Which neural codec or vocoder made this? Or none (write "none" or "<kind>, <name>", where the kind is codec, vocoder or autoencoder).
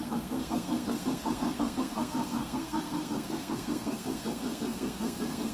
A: codec, SNAC